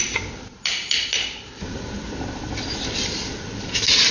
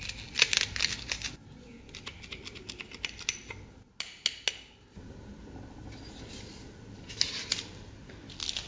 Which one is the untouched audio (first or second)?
second